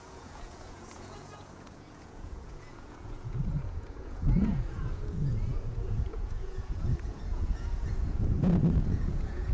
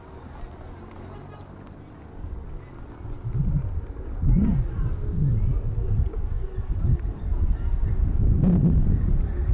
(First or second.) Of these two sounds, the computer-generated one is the first